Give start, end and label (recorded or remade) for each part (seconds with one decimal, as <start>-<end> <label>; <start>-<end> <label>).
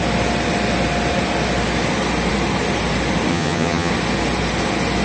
0.0-3.3 recorded; 3.3-3.9 remade; 3.9-5.0 recorded